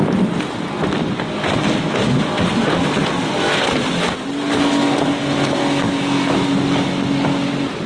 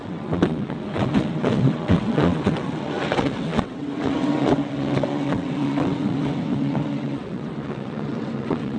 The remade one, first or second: second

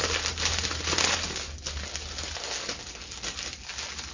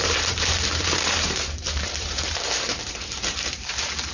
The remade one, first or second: second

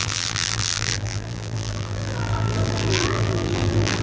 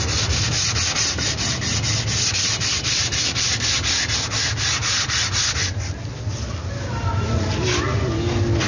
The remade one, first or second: first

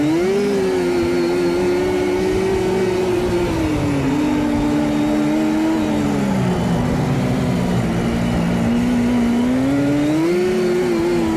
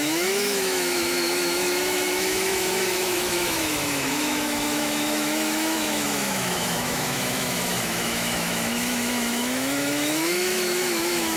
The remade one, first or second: second